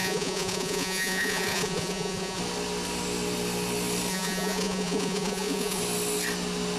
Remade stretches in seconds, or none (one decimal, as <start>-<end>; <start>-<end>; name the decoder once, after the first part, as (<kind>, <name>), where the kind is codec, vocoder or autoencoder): 0.0-2.4 (vocoder, Vocos); 4.1-5.8